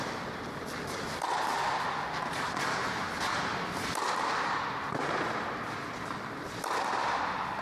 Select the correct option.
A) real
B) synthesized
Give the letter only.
A